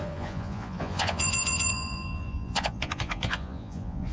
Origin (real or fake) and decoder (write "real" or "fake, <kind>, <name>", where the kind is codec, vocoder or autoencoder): fake, vocoder, Vocos